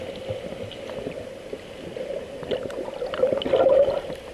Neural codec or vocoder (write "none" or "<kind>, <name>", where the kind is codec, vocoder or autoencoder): none